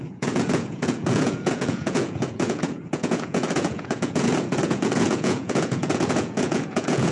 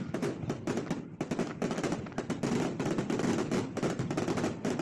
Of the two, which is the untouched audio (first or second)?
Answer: second